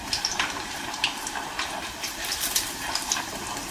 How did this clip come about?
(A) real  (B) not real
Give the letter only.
B